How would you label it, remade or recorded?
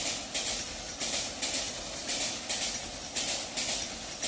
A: recorded